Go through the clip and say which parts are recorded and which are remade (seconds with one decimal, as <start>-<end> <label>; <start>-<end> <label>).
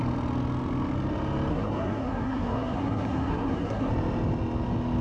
0.0-1.5 recorded; 1.5-3.9 remade; 3.9-5.0 recorded